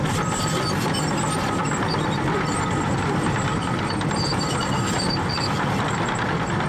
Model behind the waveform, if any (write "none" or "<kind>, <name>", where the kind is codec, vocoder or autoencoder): none